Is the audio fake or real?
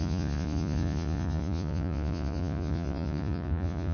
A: fake